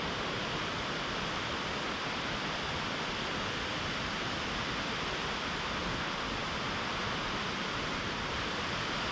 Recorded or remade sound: recorded